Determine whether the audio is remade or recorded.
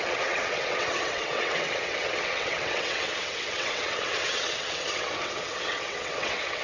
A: remade